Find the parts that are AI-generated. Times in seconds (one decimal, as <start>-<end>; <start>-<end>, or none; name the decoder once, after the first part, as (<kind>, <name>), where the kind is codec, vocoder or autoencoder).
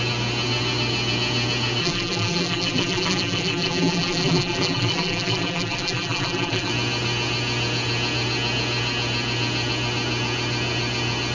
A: 1.8-6.7 (vocoder, BigVGAN v2)